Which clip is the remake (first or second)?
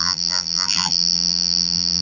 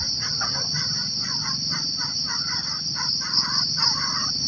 first